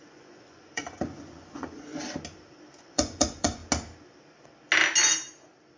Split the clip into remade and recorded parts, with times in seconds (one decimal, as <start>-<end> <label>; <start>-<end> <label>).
0.0-1.9 remade; 1.9-2.8 recorded; 2.8-3.6 remade; 3.6-5.8 recorded